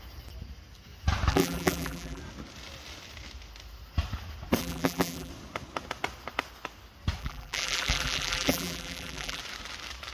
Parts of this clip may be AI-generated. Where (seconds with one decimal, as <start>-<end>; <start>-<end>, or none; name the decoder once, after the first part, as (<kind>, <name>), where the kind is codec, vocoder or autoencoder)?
1.3-2.2 (vocoder, BigVGAN v2); 4.6-5.3; 7.2-9.4